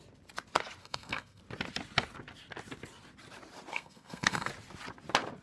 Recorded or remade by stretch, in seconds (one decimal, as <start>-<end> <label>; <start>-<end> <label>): 0.0-0.8 recorded; 0.8-1.4 remade; 1.4-3.7 recorded; 3.7-4.5 remade; 4.5-5.4 recorded